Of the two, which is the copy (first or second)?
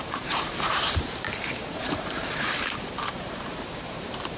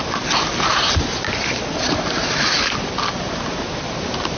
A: first